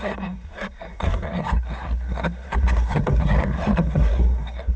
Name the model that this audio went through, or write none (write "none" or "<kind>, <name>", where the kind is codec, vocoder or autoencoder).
codec, SNAC